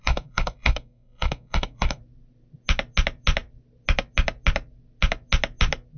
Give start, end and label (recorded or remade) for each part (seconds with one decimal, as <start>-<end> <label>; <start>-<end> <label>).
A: 0.0-2.0 remade; 2.0-6.0 recorded